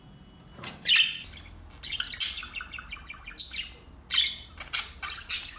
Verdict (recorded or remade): recorded